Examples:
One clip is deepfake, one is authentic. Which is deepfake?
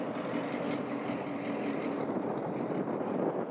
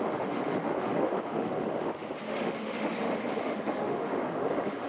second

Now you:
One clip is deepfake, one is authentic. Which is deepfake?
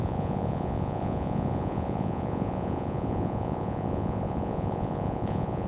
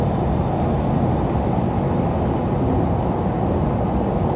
first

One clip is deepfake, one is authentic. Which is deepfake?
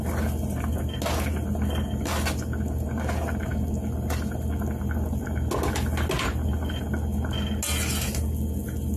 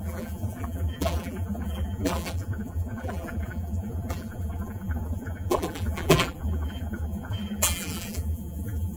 second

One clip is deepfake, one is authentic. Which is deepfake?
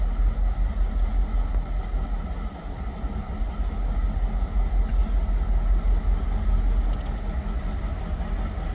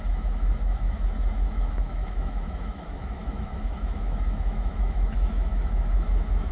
second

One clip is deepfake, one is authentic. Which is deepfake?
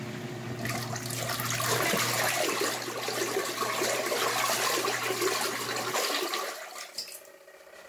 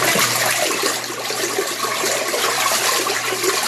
second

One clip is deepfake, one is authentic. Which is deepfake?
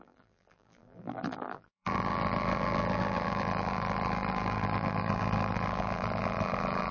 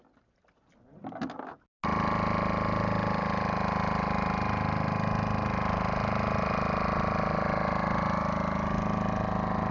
first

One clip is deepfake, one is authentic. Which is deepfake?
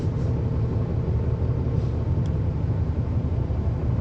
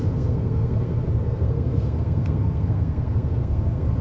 second